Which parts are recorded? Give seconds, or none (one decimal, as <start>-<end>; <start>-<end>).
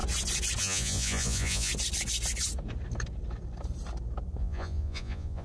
0.0-0.6; 1.7-4.4